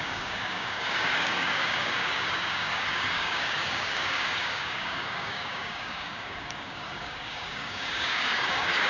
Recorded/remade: remade